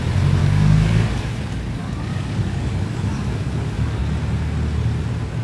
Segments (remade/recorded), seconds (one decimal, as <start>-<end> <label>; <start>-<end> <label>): 0.0-0.4 recorded; 0.4-1.4 remade; 1.4-1.8 recorded; 1.8-4.0 remade; 4.0-5.4 recorded